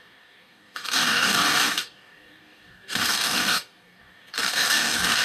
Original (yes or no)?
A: no